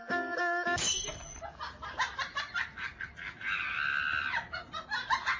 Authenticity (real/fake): real